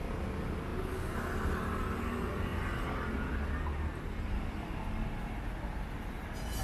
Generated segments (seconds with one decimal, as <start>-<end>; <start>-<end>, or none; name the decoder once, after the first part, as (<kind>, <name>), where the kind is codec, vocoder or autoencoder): none